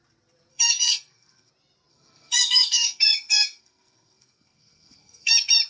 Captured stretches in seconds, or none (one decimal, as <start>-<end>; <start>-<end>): 0.0-0.5; 1.5-1.9; 5.3-5.7